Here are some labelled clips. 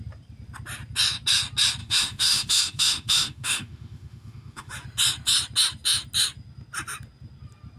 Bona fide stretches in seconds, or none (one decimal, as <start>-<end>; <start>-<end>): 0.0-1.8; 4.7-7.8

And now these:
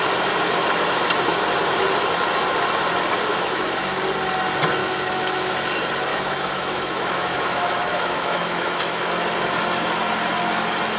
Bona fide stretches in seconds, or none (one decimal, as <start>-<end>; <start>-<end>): 0.0-3.3; 4.0-4.8; 5.5-6.1; 9.1-11.0

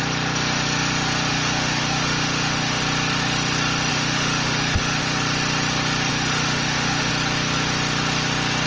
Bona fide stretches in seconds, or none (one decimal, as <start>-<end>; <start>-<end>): 0.0-1.3; 2.8-3.9; 5.0-6.1; 7.1-8.7